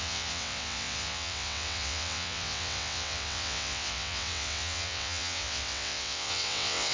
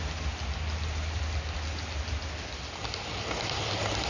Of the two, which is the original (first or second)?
second